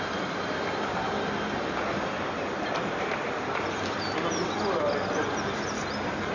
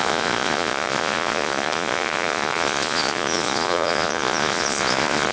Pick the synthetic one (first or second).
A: second